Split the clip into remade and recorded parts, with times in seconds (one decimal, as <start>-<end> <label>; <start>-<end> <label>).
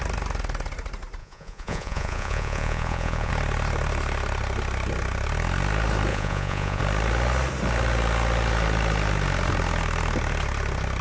0.0-1.2 recorded; 1.2-3.3 remade; 3.3-6.1 recorded; 6.1-6.8 remade; 6.8-11.0 recorded